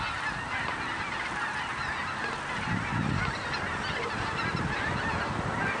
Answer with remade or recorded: recorded